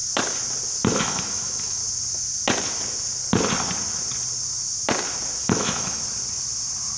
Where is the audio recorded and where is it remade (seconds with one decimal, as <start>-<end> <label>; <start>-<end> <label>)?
0.0-1.0 recorded; 1.0-1.8 remade; 1.8-5.4 recorded; 5.4-6.0 remade; 6.0-7.0 recorded